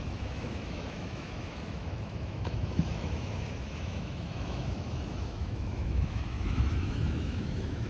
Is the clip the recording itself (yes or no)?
no